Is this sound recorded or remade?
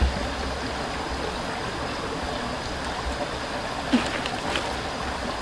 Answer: recorded